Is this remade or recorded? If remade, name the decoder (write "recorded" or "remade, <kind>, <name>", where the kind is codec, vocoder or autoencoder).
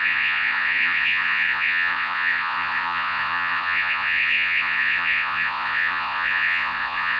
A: remade, vocoder, Vocos